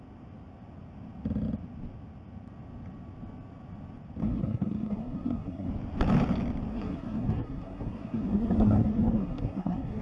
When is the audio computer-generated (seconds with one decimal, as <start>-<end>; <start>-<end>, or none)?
4.2-5.7; 6.7-10.0